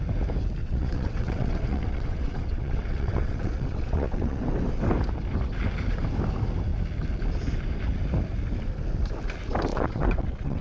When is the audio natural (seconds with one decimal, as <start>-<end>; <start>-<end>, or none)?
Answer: 0.0-0.6; 4.4-9.7